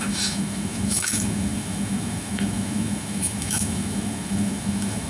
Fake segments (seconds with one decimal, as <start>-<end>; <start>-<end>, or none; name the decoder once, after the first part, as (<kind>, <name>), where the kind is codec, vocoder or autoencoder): 0.0-5.1 (autoencoder, DAC-VAE)